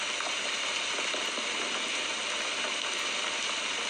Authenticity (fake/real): real